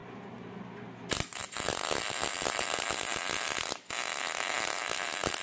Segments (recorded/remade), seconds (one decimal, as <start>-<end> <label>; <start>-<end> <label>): 0.0-5.4 recorded

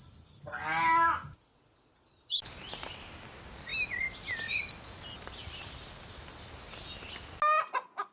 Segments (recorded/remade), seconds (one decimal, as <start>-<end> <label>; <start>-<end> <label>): 0.0-8.1 recorded

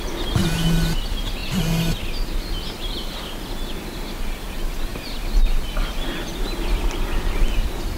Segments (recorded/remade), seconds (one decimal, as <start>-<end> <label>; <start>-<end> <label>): 0.0-8.0 recorded